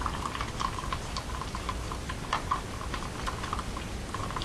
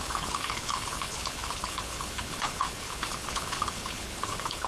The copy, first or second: second